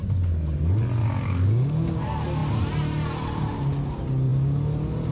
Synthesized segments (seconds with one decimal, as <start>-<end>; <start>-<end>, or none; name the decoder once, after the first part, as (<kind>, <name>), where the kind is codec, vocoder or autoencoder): 1.0-2.0 (codec, DAC)